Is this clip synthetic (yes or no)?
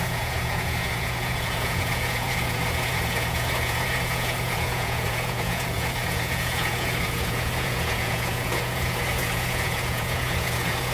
yes